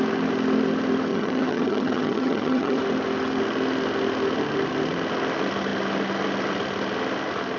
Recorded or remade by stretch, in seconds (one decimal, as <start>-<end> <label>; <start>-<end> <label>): 0.0-1.1 recorded; 1.1-2.8 remade; 2.8-7.6 recorded